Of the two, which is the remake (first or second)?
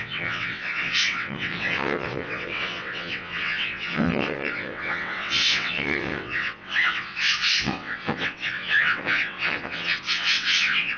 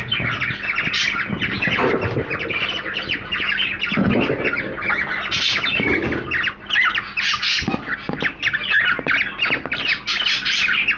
first